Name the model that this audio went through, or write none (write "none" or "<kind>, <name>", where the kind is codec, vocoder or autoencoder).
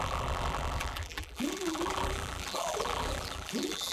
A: vocoder, BigVGAN v2